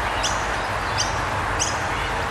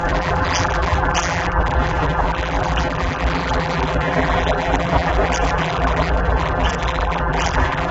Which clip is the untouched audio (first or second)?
first